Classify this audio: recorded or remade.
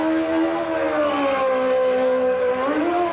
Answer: recorded